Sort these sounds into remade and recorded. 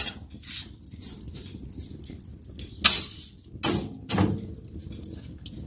recorded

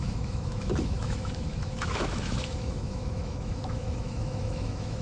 remade